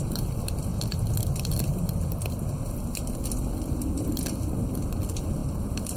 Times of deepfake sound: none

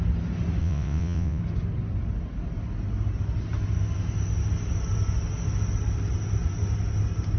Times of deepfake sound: 0.6-1.4 (vocoder, WaveNeXt)

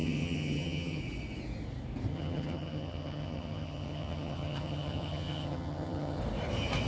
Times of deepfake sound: 0.0-1.0 (vocoder, HiFi-GAN); 2.1-6.2